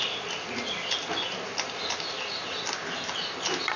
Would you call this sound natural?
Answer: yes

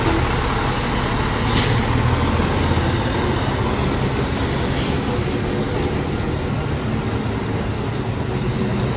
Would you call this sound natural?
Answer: yes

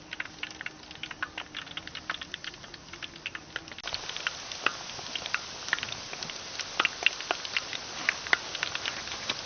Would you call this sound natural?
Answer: yes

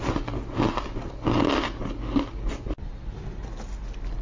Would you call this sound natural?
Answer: yes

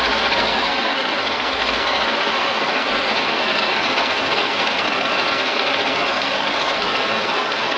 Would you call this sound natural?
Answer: no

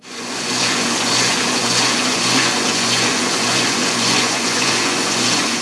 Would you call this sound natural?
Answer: no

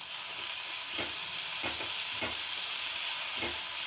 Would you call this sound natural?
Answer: no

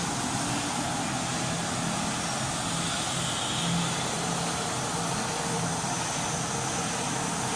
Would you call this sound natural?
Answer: yes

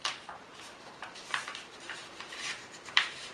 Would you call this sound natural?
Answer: no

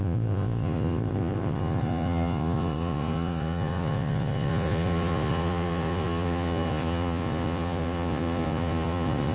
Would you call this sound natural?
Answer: no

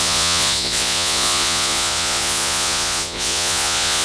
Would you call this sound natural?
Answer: no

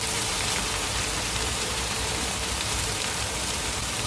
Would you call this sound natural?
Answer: no